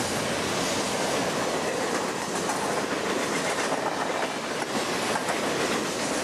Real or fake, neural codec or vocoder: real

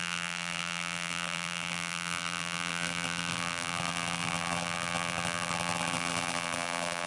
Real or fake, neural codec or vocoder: fake, vocoder, BigVGAN v2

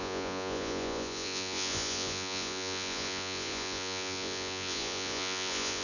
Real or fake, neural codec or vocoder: fake, vocoder, Vocos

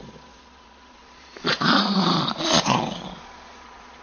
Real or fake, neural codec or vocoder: fake, vocoder, Vocos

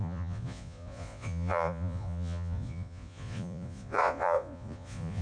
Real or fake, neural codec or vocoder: fake, vocoder, Vocos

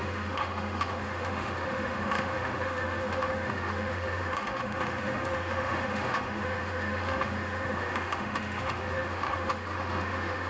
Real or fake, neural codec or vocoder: fake, autoencoder, DAC-VAE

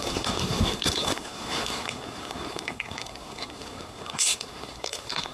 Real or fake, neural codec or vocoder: fake, codec, SNAC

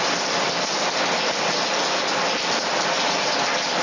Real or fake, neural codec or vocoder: fake, vocoder, BigVGAN v2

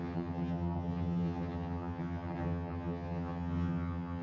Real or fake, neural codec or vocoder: fake, vocoder, HiFi-GAN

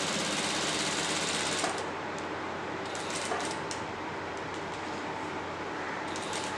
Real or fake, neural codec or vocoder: real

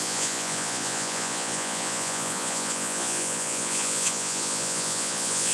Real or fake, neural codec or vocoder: fake, vocoder, Vocos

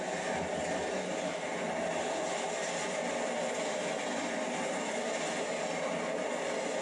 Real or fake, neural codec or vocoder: real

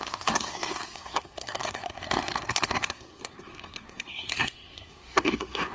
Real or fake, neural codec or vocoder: fake, codec, SNAC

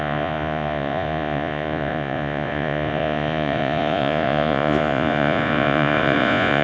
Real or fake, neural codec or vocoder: fake, vocoder, Vocos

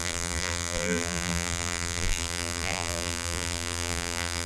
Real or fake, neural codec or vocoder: fake, vocoder, BigVGAN v2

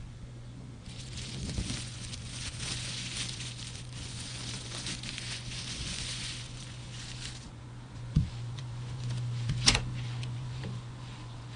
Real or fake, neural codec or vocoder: fake, vocoder, Vocos